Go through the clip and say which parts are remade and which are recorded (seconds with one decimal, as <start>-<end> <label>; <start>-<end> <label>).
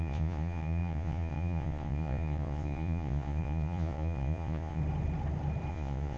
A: 0.0-4.8 remade; 4.8-5.7 recorded; 5.7-6.2 remade